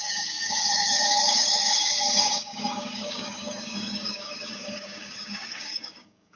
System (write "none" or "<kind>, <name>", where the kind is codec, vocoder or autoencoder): codec, DAC